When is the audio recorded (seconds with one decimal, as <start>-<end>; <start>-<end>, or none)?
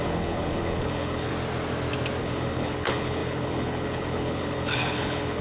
1.3-2.2